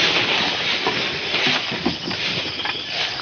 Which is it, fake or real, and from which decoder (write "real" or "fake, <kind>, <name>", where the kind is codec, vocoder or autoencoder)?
real